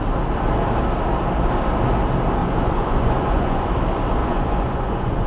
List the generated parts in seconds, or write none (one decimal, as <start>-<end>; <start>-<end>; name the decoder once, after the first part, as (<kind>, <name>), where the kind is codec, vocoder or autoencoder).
2.4-3.7 (vocoder, Vocos); 4.2-5.3

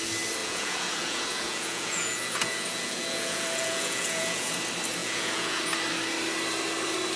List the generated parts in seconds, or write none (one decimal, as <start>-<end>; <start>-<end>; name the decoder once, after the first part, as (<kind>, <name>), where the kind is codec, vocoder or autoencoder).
0.4-4.5 (vocoder, Vocos); 5.0-5.6

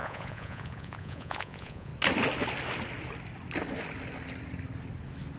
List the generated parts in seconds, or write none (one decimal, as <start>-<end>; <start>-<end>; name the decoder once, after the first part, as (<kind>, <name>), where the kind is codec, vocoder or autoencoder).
0.0-1.9 (vocoder, Vocos)

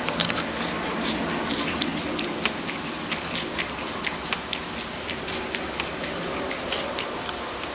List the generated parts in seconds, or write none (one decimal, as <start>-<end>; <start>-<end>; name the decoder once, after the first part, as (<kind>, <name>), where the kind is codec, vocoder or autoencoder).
none

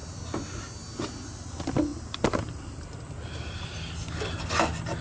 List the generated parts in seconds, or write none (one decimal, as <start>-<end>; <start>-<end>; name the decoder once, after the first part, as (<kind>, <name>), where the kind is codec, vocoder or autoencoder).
none